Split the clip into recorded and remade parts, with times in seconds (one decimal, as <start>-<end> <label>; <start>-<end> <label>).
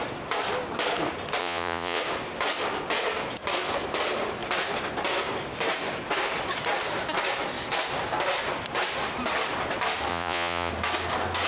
0.0-1.4 recorded; 1.4-2.0 remade; 2.0-10.1 recorded; 10.1-10.7 remade; 10.7-11.5 recorded